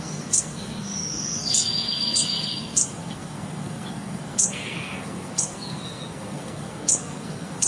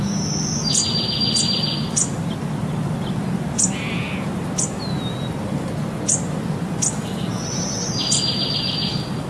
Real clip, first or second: second